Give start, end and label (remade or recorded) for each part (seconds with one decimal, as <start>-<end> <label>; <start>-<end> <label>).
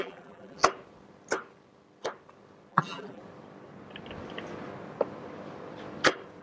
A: 0.0-0.6 remade; 0.6-2.7 recorded; 2.7-3.2 remade; 3.2-6.4 recorded